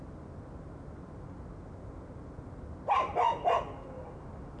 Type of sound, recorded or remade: recorded